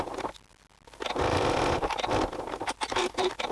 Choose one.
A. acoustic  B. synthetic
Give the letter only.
A